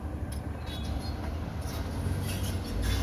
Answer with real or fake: real